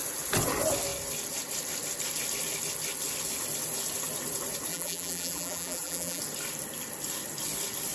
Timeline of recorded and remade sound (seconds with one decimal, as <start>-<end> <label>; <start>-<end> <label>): 0.0-4.7 recorded; 4.7-6.2 remade; 6.2-7.9 recorded